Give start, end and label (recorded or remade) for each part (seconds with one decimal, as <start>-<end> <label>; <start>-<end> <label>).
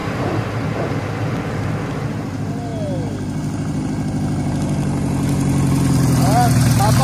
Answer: 0.0-7.0 recorded